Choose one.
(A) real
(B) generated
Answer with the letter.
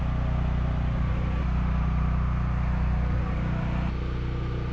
A